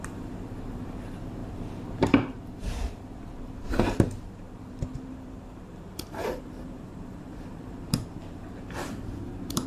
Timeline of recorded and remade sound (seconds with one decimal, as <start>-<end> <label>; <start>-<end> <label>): 0.0-9.7 remade

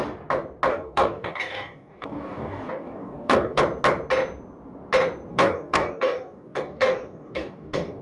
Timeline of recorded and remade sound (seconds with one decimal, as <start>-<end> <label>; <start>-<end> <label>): 0.0-0.7 recorded; 0.7-3.6 remade; 3.6-5.3 recorded; 5.3-8.0 remade

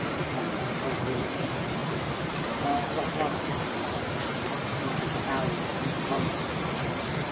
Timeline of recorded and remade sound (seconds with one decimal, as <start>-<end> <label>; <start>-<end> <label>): 0.0-4.7 recorded; 4.7-5.3 remade; 5.3-5.7 recorded; 5.7-7.3 remade

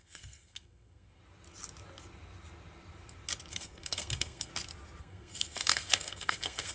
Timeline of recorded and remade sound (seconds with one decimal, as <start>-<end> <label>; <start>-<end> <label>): 0.0-1.2 remade; 1.2-3.5 recorded; 3.5-4.5 remade; 4.5-5.0 recorded; 5.0-6.7 remade

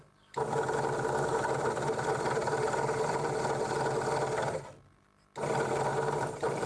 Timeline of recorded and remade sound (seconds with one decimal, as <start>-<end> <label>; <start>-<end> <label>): 0.0-2.4 recorded; 2.4-3.3 remade; 3.3-5.9 recorded; 5.9-6.7 remade